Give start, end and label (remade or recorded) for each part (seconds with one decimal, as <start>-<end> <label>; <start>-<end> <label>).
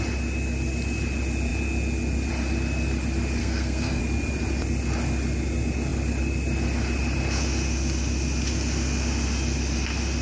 0.0-3.4 recorded; 3.4-4.0 remade; 4.0-10.2 recorded